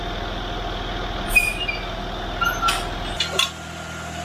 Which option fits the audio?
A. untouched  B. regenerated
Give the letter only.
A